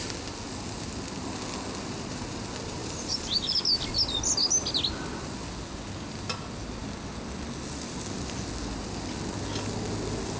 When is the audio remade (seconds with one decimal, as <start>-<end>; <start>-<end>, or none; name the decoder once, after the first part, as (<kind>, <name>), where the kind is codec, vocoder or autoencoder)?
2.8-3.6 (vocoder, BigVGAN v2)